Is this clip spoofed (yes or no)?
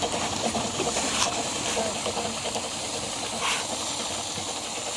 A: no